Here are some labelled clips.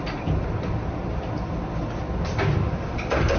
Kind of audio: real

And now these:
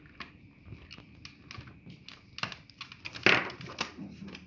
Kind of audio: real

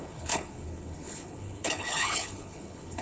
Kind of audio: fake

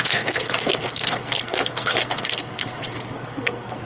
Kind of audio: fake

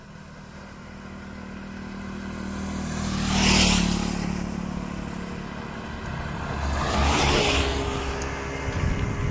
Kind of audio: real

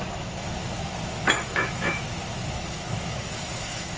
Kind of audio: fake